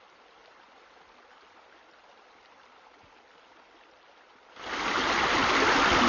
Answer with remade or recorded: recorded